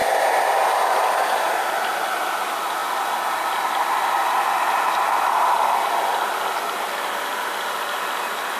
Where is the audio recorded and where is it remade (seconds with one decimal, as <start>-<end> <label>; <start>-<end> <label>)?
0.0-8.6 recorded